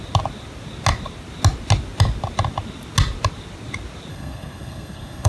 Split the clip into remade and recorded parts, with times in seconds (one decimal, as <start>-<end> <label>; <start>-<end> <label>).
0.0-4.1 recorded; 4.1-5.3 remade